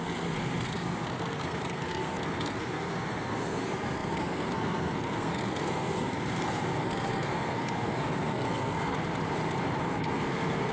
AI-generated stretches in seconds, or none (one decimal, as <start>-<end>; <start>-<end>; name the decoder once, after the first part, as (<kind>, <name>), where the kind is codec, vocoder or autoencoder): 0.0-8.9 (codec, SNAC); 9.8-10.7

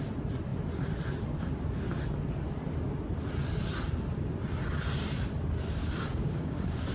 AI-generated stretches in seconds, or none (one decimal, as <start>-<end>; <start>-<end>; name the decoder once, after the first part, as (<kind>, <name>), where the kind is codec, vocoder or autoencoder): 5.8-6.9 (codec, DAC)